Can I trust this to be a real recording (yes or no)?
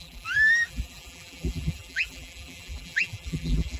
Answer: no